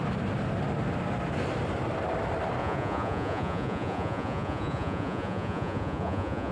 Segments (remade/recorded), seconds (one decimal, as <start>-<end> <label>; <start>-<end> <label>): 0.0-2.6 recorded; 2.6-6.5 remade